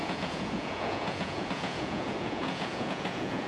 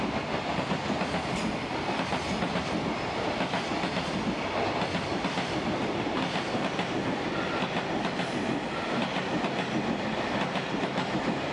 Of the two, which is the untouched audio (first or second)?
second